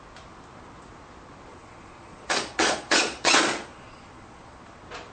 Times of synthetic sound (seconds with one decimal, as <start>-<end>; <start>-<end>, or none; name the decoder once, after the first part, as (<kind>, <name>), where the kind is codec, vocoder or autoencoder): 1.5-4.6 (vocoder, Vocos)